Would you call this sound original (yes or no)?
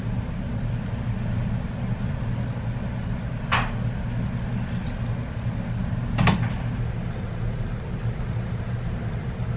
yes